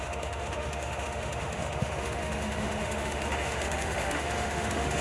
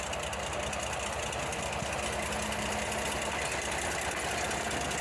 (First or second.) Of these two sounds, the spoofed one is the first